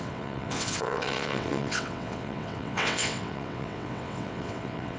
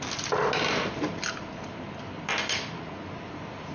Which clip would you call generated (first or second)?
first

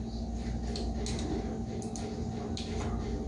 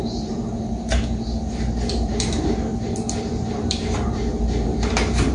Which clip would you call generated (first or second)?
second